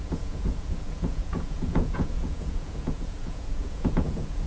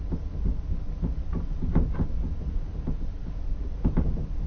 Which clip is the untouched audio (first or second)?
second